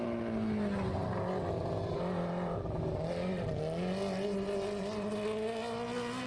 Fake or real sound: real